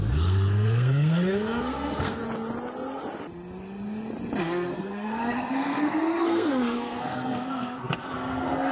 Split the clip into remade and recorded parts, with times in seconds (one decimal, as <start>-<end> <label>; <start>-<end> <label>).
0.0-2.2 remade; 2.2-4.4 recorded; 4.4-8.7 remade